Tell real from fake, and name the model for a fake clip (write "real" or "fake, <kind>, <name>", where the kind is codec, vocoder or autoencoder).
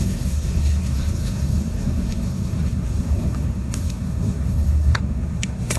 fake, codec, SNAC